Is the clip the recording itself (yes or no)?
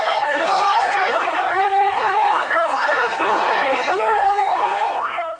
no